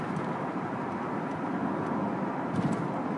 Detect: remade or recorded recorded